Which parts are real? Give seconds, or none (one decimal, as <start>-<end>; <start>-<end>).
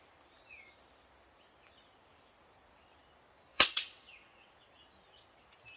0.0-3.5; 4.5-5.8